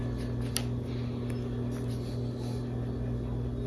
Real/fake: real